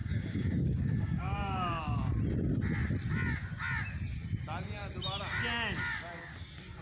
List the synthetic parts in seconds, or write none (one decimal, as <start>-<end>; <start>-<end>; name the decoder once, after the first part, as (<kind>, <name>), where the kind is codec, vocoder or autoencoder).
0.0-2.1 (codec, DAC)